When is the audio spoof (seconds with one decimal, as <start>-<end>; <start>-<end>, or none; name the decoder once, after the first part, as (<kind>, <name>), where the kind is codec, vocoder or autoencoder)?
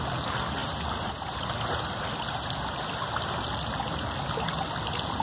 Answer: none